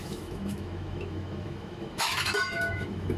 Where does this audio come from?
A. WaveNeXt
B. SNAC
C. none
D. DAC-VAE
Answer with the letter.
D